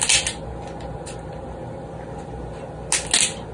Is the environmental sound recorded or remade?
recorded